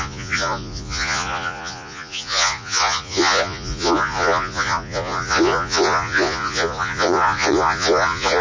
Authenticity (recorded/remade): remade